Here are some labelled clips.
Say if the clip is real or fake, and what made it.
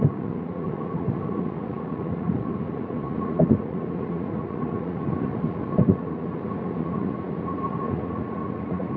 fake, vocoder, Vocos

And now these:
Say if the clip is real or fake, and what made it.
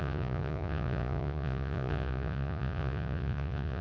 fake, vocoder, Vocos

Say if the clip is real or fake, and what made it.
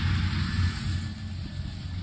real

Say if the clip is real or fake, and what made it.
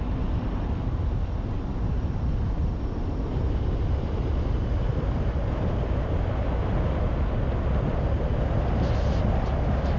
real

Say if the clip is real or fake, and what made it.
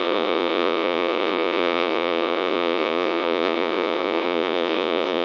fake, vocoder, Vocos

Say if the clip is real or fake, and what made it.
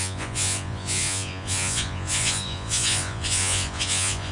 fake, vocoder, Vocos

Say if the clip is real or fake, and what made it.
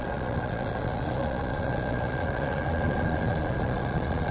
fake, vocoder, Vocos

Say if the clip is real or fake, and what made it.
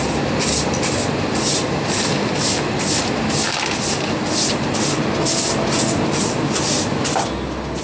real